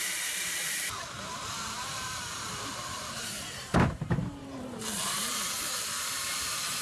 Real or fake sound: fake